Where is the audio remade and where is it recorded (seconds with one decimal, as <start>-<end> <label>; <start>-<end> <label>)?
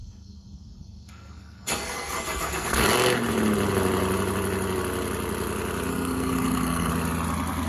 0.0-2.9 remade; 2.9-5.9 recorded; 5.9-6.9 remade; 6.9-7.7 recorded